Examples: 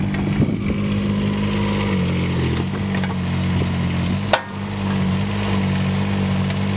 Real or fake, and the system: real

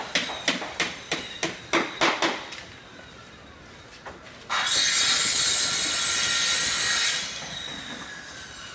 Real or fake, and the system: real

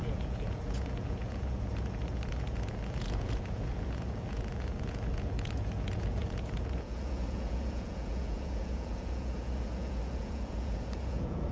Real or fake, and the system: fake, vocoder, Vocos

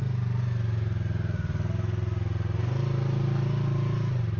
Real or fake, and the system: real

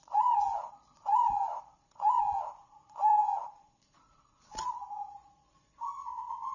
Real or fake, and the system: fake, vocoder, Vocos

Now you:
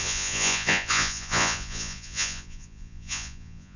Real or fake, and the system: fake, vocoder, Vocos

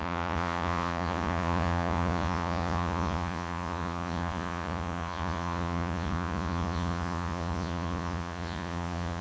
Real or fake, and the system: fake, vocoder, Vocos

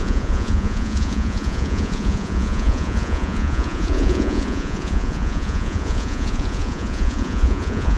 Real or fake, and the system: fake, vocoder, Vocos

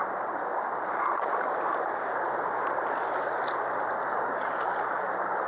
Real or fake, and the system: real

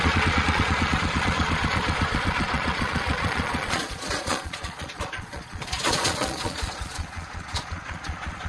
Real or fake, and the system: fake, vocoder, Vocos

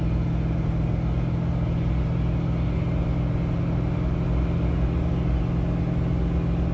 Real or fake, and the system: real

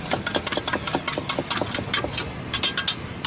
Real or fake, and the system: real